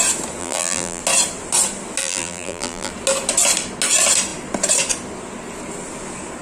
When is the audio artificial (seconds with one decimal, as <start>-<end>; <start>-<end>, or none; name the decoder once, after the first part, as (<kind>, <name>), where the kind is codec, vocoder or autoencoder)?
0.4-1.0 (vocoder, BigVGAN v2); 2.0-2.9